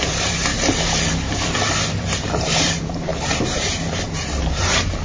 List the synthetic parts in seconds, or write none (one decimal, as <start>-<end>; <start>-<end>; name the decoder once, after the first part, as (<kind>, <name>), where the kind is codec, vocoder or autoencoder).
0.0-0.5 (vocoder, BigVGAN v2); 1.1-5.0